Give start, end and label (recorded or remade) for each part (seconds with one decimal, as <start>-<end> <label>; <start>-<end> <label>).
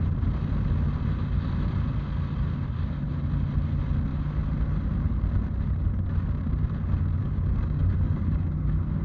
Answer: 0.0-7.2 recorded; 7.2-9.0 remade